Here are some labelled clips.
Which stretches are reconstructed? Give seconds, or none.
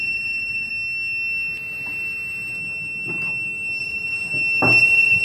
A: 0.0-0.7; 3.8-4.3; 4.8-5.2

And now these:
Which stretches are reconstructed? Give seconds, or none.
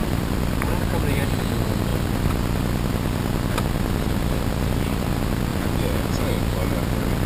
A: 0.0-1.4; 5.5-6.2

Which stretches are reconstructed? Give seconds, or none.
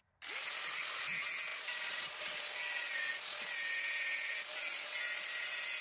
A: none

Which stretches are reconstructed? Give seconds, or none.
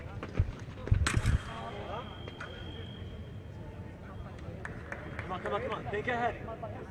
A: none